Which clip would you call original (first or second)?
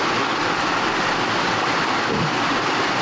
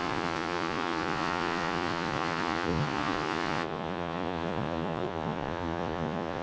first